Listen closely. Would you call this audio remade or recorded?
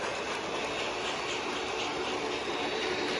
recorded